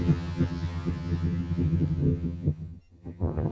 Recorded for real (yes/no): no